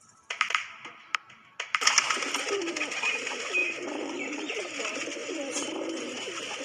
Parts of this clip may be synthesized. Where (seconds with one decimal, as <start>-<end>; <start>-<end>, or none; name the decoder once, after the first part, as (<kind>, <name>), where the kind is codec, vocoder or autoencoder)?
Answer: 3.6-4.8 (vocoder, BigVGAN v2); 5.2-6.0